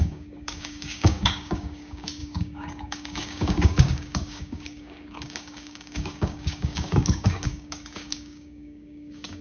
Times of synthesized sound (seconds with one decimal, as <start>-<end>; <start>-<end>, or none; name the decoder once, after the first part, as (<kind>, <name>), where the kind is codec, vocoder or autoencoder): 0.0-9.4 (codec, DAC)